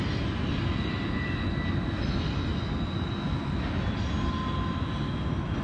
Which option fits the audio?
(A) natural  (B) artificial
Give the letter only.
A